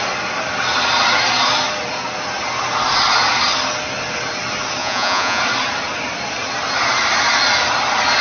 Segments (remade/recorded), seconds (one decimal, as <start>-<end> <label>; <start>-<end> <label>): 0.0-4.8 recorded; 4.8-5.4 remade; 5.4-8.2 recorded